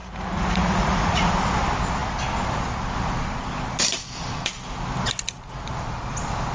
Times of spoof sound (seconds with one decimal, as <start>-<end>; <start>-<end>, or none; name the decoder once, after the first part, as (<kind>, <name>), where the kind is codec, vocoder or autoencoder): 0.0-1.3 (vocoder, Vocos)